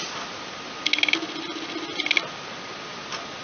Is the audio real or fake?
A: real